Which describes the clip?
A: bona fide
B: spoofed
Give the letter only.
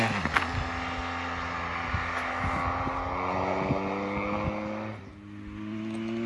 A